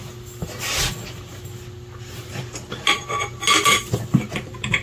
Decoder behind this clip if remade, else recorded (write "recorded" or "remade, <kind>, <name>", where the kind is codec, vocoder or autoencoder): recorded